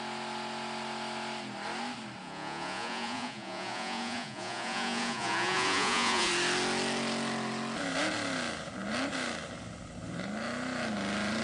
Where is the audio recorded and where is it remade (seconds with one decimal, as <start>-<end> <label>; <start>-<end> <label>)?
0.0-2.2 recorded; 2.2-6.3 remade; 6.3-11.4 recorded